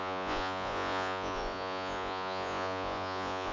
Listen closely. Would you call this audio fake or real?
fake